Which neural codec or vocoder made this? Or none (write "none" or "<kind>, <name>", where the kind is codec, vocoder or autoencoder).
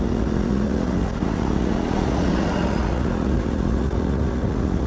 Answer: vocoder, Vocos